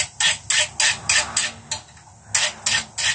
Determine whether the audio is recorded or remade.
recorded